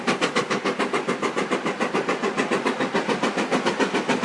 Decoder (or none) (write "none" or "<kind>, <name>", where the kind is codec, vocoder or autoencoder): none